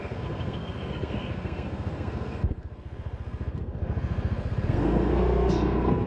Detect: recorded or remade remade